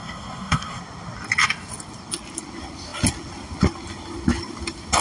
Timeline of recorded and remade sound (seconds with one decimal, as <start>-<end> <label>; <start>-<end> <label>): 0.0-0.8 remade; 0.8-5.0 recorded